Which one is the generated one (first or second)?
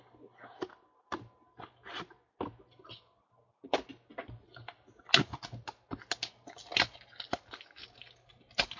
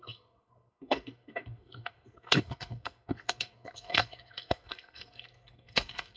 second